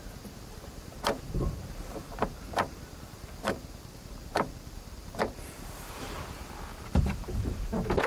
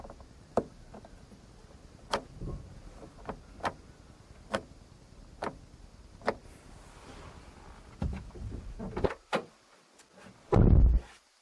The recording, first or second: second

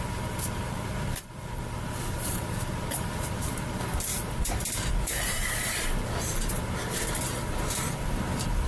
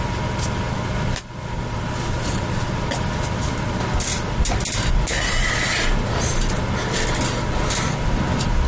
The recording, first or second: second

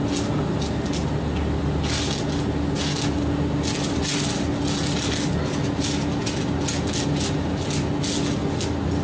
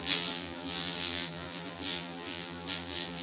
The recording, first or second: first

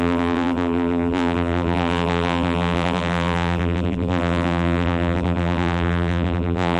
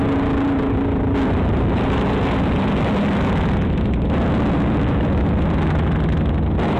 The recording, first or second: second